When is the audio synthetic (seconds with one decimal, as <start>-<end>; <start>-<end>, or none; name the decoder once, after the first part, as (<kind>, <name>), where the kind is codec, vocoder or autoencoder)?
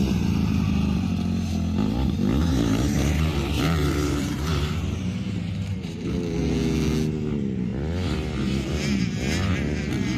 2.4-6.1 (vocoder, BigVGAN v2)